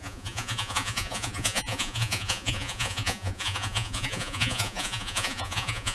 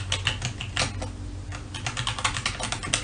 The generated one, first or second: first